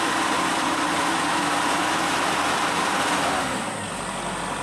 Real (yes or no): yes